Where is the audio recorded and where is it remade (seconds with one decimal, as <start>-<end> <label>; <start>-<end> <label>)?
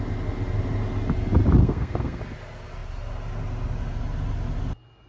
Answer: 0.0-1.6 recorded; 1.6-2.2 remade; 2.2-5.1 recorded